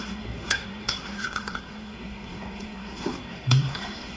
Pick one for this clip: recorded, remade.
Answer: remade